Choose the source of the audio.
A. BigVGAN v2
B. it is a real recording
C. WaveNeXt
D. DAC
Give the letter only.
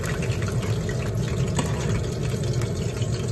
B